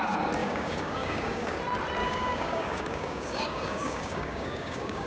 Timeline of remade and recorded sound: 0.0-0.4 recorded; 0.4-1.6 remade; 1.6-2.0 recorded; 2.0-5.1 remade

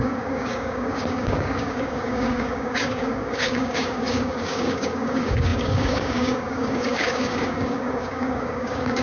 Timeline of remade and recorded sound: 0.0-9.0 remade

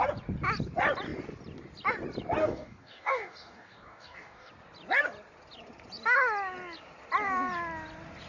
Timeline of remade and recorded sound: 0.0-2.4 recorded; 2.4-4.5 remade; 4.5-8.3 recorded

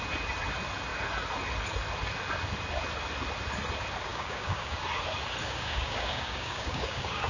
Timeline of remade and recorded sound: 0.0-4.1 recorded; 4.1-4.8 remade; 4.8-5.4 recorded; 5.4-7.3 remade

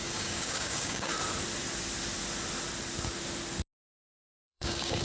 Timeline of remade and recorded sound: 0.0-1.1 remade; 1.1-4.1 recorded; 4.1-5.0 remade